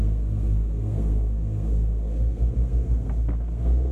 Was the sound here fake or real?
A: fake